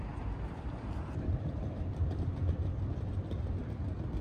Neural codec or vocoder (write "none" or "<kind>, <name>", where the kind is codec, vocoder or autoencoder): vocoder, BigVGAN v2